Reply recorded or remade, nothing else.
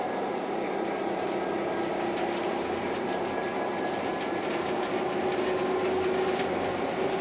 recorded